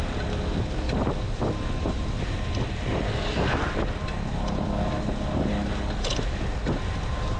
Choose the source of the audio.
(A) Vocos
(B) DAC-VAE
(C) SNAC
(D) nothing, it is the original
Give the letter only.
D